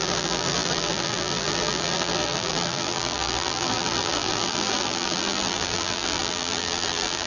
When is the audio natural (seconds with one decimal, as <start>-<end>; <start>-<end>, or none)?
none